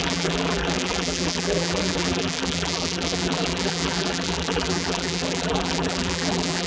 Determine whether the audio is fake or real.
fake